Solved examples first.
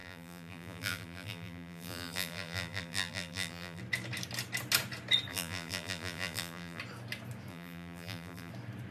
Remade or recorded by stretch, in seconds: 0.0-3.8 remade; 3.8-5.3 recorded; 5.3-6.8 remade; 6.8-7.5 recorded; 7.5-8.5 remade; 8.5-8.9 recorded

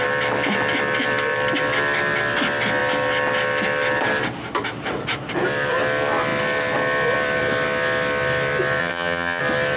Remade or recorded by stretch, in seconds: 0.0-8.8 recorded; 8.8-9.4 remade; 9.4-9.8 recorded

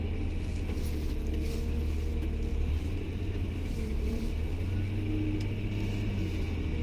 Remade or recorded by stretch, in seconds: 0.0-2.5 recorded; 2.5-4.2 remade; 4.2-6.8 recorded